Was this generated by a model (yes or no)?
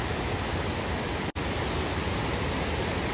no